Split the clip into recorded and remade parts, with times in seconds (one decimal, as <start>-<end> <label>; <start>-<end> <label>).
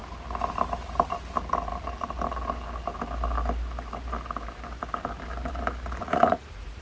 0.0-6.0 recorded; 6.0-6.8 remade